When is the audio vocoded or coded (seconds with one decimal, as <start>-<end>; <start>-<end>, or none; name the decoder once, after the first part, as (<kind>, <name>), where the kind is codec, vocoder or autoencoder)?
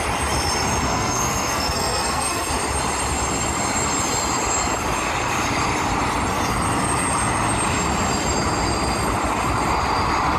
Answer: 0.9-2.5 (codec, SNAC)